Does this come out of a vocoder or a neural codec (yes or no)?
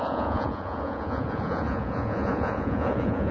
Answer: yes